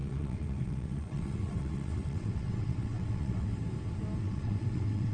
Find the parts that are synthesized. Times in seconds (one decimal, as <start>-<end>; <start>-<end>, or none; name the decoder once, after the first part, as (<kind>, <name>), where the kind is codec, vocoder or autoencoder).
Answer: 0.0-3.5 (vocoder, WaveNeXt); 4.2-5.1